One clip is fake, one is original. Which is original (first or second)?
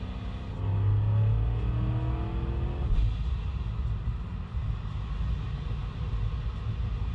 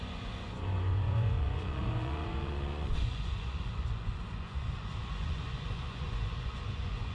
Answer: first